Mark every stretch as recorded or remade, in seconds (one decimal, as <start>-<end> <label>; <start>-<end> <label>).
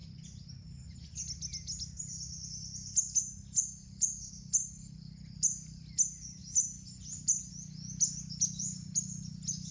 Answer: 0.0-9.7 recorded